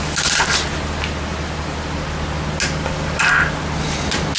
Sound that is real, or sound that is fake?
real